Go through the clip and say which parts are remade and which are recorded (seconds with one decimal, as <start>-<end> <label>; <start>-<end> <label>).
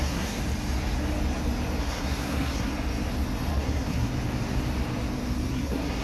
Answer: 0.0-0.4 remade; 0.4-1.8 recorded; 1.8-2.7 remade; 2.7-3.5 recorded; 3.5-4.1 remade; 4.1-5.5 recorded; 5.5-6.0 remade